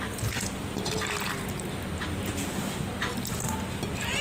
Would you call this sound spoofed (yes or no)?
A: no